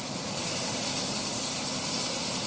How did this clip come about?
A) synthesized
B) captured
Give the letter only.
B